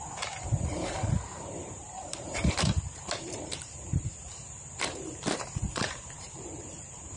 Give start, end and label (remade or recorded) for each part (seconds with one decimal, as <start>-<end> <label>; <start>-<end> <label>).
0.0-7.2 remade